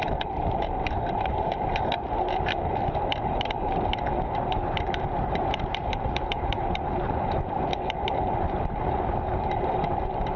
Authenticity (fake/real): fake